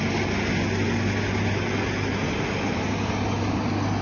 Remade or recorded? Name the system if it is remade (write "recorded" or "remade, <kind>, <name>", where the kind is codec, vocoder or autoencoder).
recorded